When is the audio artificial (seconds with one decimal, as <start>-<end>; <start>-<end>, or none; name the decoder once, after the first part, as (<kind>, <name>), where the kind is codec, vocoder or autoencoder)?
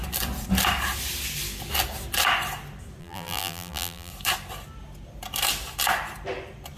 3.0-4.1 (vocoder, BigVGAN v2)